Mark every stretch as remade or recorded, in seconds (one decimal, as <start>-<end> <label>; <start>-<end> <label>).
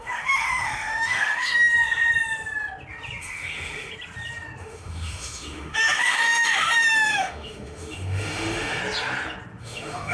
0.0-1.7 remade; 1.7-3.2 recorded; 3.2-3.9 remade; 3.9-4.6 recorded; 4.6-8.8 remade; 8.8-9.6 recorded; 9.6-10.1 remade